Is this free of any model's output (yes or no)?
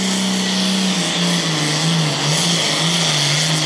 yes